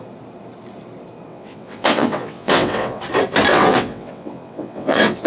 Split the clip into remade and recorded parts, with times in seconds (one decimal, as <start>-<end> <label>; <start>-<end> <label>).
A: 0.0-1.3 recorded; 1.3-3.0 remade; 3.0-3.5 recorded; 3.5-5.3 remade